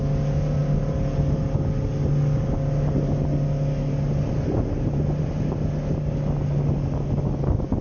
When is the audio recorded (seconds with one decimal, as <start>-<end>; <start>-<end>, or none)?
0.0-7.8